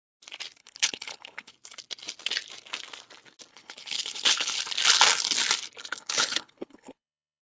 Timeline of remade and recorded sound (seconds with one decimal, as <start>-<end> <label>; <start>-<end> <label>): 0.0-0.6 recorded; 0.6-1.5 remade; 1.5-3.5 recorded; 3.5-4.6 remade; 4.6-5.9 recorded; 5.9-7.4 remade